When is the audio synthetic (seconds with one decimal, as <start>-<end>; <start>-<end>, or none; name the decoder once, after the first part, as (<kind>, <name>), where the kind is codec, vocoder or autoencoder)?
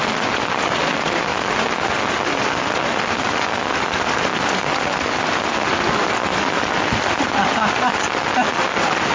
none